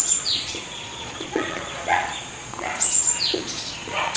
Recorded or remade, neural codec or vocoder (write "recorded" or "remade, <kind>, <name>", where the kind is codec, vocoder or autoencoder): remade, vocoder, Vocos